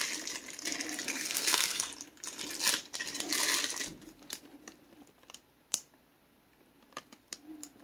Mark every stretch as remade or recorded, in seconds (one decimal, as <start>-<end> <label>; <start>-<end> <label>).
0.0-1.1 recorded; 1.1-1.9 remade; 1.9-7.8 recorded